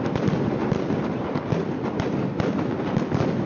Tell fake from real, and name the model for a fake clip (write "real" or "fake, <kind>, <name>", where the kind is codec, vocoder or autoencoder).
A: real